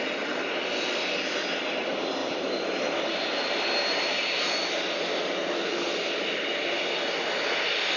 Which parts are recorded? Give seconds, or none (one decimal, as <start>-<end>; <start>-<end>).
0.0-8.0